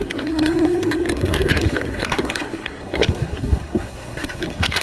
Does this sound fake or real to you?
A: fake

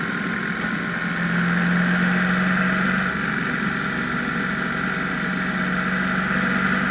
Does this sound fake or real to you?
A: real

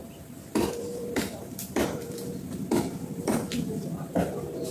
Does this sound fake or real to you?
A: fake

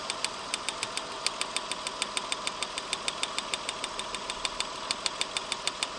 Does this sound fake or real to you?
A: real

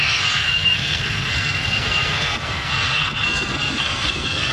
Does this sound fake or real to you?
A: fake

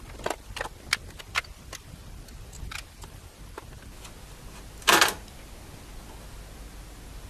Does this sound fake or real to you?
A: real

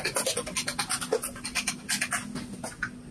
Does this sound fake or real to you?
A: real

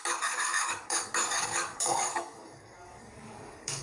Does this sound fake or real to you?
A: fake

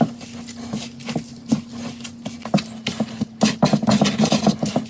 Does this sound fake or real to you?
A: real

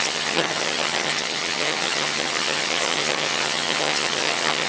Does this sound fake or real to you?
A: fake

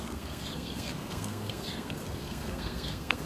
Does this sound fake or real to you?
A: fake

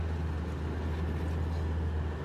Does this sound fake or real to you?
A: real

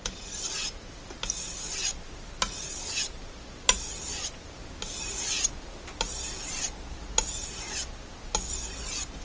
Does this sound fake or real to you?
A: real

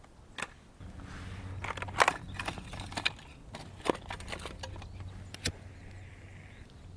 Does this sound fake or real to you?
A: real